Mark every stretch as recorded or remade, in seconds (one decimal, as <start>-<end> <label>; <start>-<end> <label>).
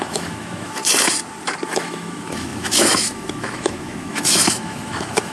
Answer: 0.0-0.8 remade; 0.8-1.7 recorded; 1.7-5.3 remade